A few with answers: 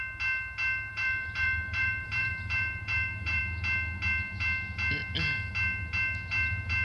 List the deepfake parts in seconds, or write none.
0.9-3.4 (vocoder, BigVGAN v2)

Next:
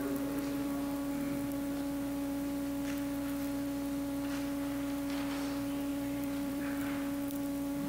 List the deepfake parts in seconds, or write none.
5.9-6.8 (vocoder, BigVGAN v2)

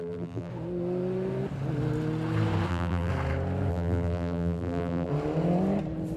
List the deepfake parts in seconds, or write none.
0.0-0.5 (vocoder, BigVGAN v2); 2.7-3.1; 3.7-5.1